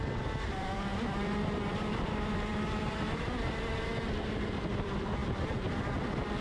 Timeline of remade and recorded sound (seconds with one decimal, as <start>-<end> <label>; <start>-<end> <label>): 0.0-0.9 remade; 0.9-1.6 recorded; 1.6-6.4 remade